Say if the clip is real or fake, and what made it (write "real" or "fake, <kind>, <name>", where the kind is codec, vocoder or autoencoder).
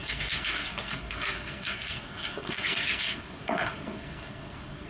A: fake, codec, SNAC